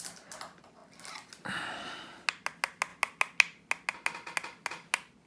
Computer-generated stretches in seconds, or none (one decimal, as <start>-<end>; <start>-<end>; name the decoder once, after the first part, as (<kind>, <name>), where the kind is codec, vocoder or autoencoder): none